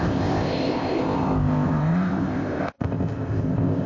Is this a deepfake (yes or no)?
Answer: yes